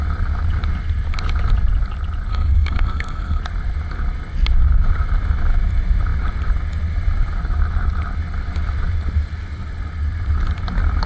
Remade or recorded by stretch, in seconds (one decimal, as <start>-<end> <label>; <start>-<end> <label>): 0.0-2.3 recorded; 2.3-3.4 remade; 3.4-11.1 recorded